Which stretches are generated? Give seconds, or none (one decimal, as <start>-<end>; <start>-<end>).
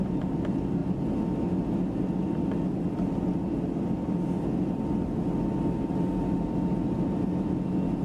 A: none